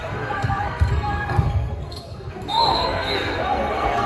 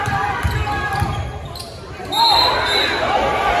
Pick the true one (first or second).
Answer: second